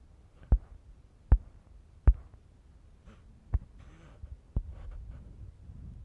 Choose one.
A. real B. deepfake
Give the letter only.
A